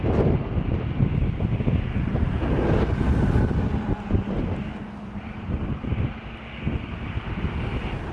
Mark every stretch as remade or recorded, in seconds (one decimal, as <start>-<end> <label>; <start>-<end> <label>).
0.0-8.1 recorded